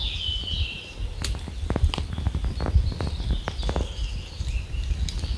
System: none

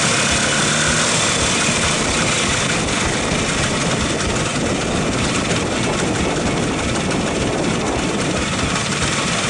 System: none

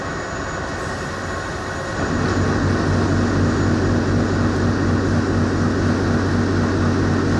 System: none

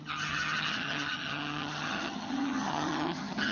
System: vocoder, HiFi-GAN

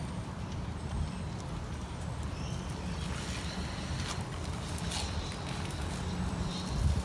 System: none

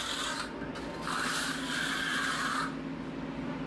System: none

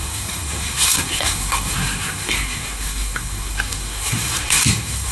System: codec, SNAC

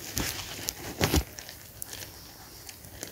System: none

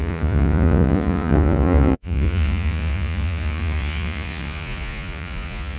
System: vocoder, Vocos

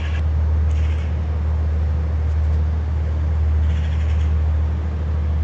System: none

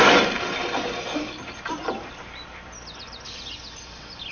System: none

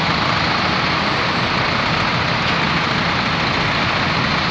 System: none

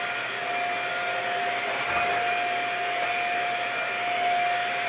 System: none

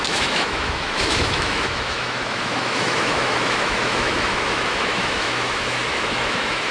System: autoencoder, DAC-VAE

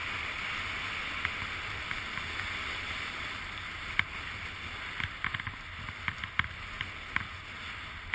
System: none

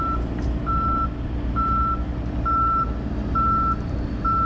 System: none